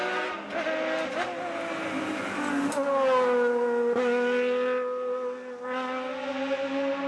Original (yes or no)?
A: yes